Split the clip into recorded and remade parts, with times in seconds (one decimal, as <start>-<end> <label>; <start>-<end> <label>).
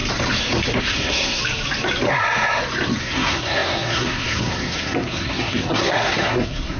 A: 0.0-0.8 recorded; 0.8-1.4 remade; 1.4-3.0 recorded; 3.0-6.8 remade